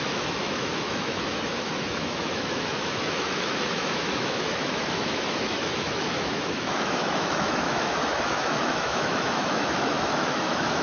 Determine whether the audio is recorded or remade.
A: remade